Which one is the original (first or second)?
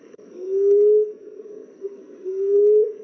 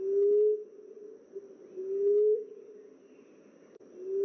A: second